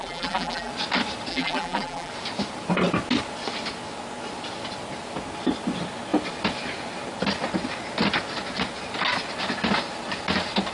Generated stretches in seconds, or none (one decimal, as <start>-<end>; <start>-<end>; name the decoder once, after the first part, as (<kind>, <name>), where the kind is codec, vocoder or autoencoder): 0.0-0.7 (vocoder, BigVGAN v2); 1.3-2.1